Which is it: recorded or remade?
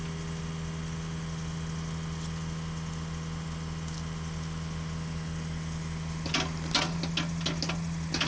recorded